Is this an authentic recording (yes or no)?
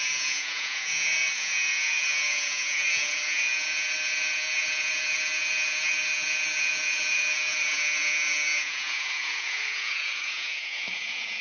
no